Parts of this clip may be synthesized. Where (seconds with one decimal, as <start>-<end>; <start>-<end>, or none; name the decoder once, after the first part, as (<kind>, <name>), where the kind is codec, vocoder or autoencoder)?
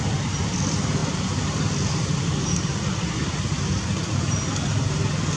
1.0-3.9 (vocoder, BigVGAN v2)